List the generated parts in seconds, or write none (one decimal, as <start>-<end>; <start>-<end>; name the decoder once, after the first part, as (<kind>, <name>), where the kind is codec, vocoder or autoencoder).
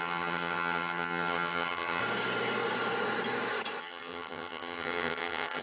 0.0-2.0 (vocoder, HiFi-GAN); 3.8-5.6